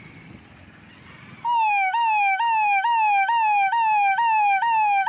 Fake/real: real